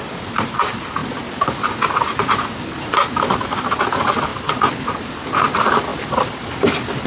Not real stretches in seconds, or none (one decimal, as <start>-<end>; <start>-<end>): none

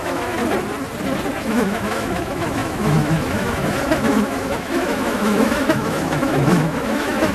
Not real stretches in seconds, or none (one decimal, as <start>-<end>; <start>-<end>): 0.0-0.4; 1.4-7.3

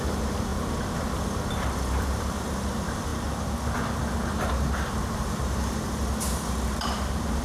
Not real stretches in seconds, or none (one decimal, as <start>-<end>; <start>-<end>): 0.0-0.5; 2.0-3.1; 4.5-6.0; 6.7-7.4

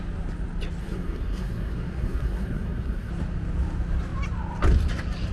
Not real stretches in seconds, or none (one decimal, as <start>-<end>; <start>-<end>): 0.8-3.1